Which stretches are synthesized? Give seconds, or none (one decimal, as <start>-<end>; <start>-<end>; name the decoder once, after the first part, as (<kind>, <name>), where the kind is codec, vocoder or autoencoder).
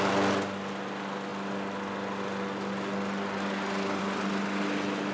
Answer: none